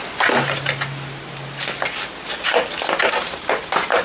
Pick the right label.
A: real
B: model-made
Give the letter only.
A